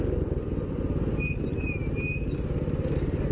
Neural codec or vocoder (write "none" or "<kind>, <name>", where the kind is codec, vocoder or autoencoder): none